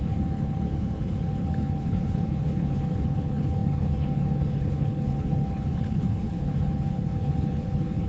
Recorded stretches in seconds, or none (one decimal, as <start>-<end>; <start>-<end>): none